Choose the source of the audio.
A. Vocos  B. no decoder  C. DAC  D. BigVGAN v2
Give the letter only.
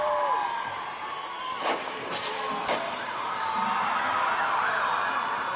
D